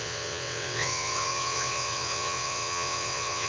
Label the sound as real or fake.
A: fake